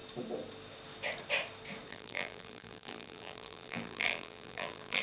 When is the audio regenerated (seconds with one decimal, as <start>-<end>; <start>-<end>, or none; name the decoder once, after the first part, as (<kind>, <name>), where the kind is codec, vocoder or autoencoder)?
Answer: 1.9-5.0 (vocoder, BigVGAN v2)